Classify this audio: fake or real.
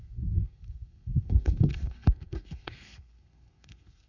fake